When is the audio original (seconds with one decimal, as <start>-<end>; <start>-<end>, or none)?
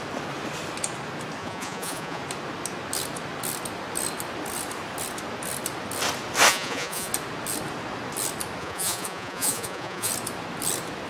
0.0-1.4; 2.2-6.5; 7.1-8.6; 10.1-11.1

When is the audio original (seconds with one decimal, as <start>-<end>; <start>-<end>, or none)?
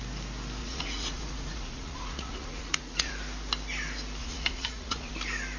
0.0-0.6; 3.1-4.2; 5.1-5.6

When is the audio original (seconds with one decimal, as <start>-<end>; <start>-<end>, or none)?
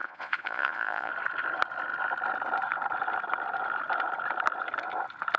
1.1-5.4